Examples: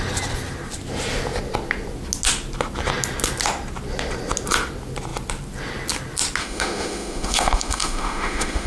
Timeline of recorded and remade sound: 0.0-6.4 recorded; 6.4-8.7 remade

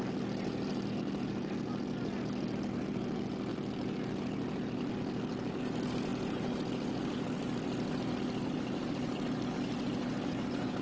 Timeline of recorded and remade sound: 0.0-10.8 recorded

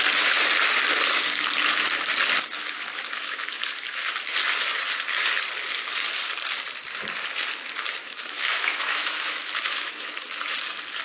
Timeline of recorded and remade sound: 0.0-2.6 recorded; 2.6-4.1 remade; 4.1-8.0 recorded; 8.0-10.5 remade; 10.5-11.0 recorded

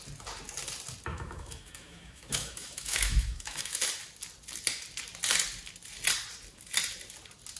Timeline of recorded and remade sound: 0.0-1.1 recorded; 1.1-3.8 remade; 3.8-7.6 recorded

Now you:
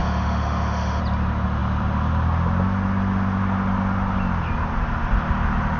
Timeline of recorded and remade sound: 0.0-1.0 remade; 1.0-5.8 recorded

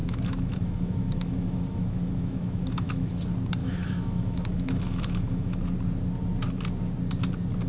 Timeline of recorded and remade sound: 0.0-3.2 remade; 3.2-3.6 recorded; 3.6-5.6 remade; 5.6-7.7 recorded

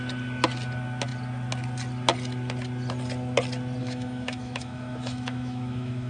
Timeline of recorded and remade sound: 0.0-3.8 recorded; 3.8-6.1 remade

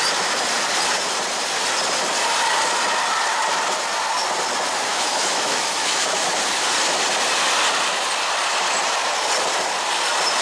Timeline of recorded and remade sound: 0.0-4.9 recorded; 4.9-6.3 remade; 6.3-10.4 recorded